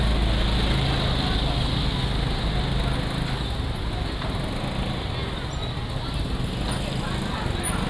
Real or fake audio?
real